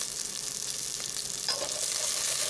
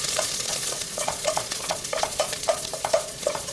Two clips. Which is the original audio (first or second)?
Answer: first